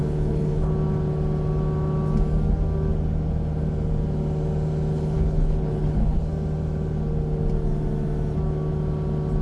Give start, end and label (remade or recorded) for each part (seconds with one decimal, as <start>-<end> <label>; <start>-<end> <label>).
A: 0.0-0.7 remade; 0.7-4.9 recorded; 4.9-6.2 remade; 6.2-9.4 recorded